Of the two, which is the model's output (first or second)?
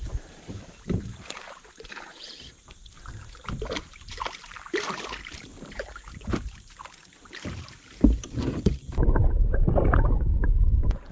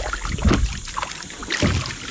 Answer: first